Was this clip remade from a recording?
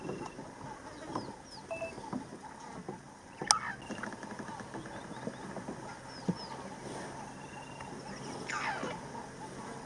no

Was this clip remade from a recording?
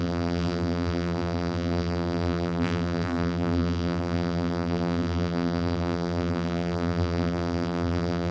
yes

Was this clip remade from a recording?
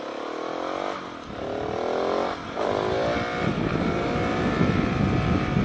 no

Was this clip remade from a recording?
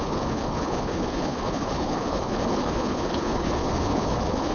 yes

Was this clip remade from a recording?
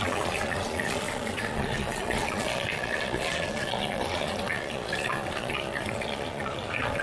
yes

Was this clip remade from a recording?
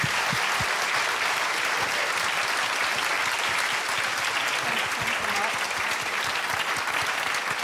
no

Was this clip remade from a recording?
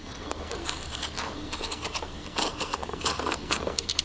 yes